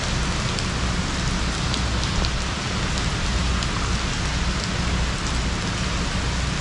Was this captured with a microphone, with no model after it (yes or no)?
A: yes